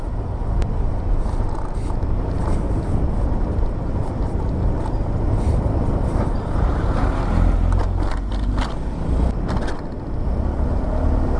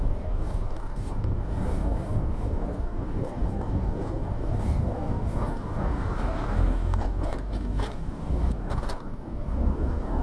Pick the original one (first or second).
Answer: first